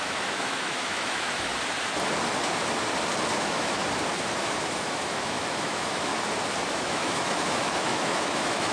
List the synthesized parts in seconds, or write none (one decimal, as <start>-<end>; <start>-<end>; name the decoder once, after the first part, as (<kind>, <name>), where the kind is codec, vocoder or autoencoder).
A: 0.0-1.5 (autoencoder, DAC-VAE); 3.4-3.8; 4.4-6.1; 6.7-8.7